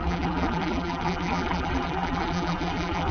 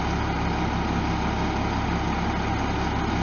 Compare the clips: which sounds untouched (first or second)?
second